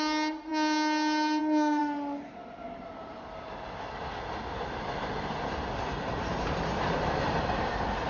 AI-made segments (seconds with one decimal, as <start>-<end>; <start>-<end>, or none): none